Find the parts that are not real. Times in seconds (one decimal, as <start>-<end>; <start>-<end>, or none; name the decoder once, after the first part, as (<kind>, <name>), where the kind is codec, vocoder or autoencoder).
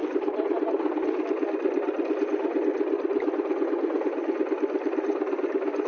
none